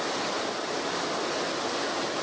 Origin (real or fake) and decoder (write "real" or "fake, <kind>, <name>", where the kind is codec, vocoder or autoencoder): real